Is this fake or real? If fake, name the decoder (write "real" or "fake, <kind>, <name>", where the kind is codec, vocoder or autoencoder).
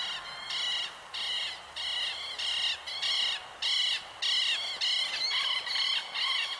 real